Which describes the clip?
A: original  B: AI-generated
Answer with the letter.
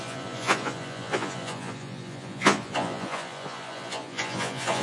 B